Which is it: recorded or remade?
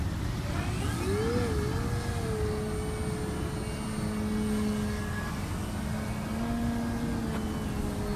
recorded